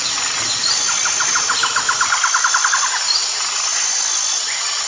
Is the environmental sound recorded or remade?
recorded